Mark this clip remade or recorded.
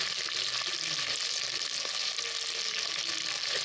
recorded